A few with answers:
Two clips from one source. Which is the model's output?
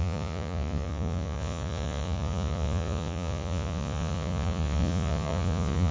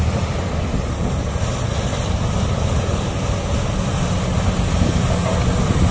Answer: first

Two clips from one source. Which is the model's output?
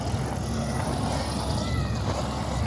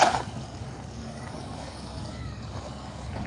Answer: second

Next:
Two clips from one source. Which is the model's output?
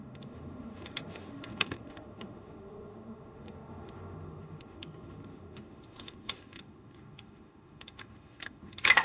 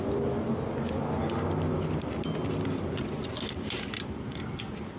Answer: first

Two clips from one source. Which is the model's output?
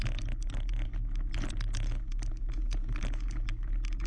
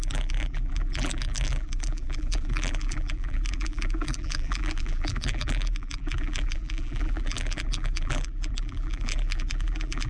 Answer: second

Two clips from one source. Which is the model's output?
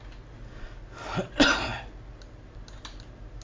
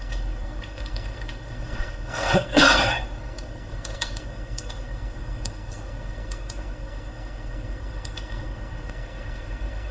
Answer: second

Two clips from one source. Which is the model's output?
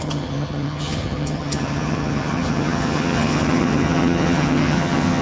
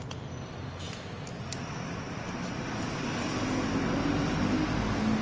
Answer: first